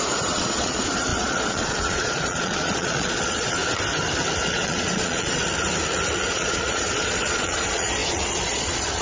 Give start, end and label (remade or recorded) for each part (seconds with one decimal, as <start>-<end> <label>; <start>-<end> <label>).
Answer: 0.0-3.6 remade; 3.6-4.5 recorded; 4.5-5.4 remade; 5.4-6.2 recorded; 6.2-9.0 remade